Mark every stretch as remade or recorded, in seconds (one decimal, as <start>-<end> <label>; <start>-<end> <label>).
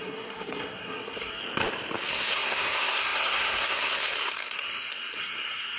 0.0-1.4 remade; 1.4-2.1 recorded; 2.1-5.8 remade